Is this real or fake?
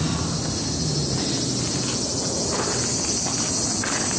real